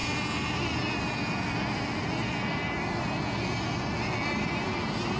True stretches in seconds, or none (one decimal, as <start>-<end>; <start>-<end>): 0.0-5.2